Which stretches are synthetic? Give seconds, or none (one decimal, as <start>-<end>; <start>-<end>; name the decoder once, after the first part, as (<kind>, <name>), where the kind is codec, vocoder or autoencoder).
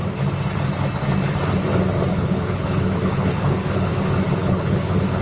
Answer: 2.1-4.0 (codec, HILCodec); 4.4-5.2